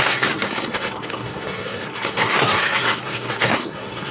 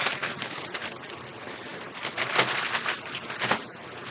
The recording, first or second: second